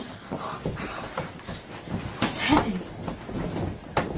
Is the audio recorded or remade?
recorded